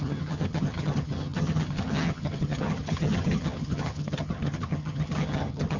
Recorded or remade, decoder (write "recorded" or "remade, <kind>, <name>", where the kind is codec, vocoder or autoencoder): remade, vocoder, HiFi-GAN